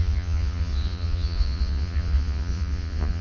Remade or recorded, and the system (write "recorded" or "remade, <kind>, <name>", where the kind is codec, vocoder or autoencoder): remade, vocoder, Vocos